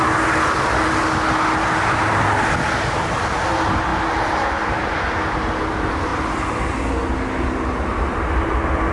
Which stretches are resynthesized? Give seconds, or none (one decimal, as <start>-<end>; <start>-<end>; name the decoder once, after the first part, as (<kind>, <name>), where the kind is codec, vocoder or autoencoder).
none